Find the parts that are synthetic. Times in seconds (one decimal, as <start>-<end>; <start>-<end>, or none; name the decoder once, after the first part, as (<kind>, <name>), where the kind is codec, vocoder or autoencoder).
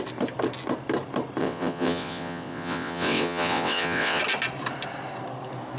1.4-4.2 (vocoder, WaveNeXt)